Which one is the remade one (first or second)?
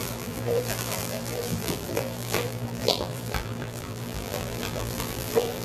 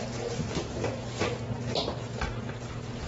first